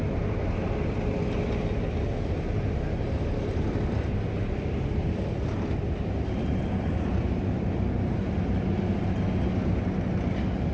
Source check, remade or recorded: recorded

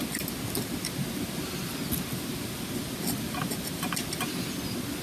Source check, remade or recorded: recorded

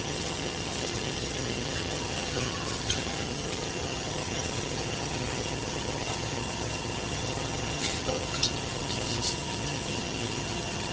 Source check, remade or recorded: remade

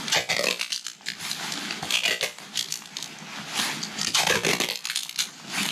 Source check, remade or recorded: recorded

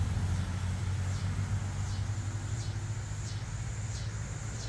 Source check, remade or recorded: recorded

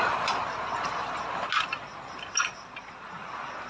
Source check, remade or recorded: recorded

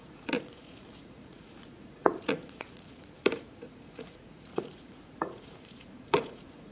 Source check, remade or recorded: remade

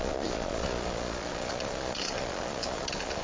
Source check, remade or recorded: remade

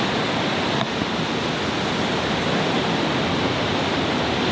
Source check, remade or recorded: recorded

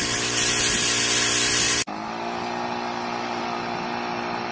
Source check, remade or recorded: recorded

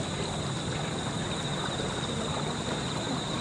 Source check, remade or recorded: recorded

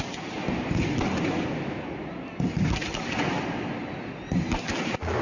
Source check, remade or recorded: recorded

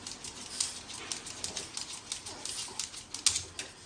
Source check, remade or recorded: recorded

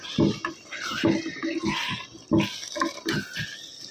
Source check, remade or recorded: recorded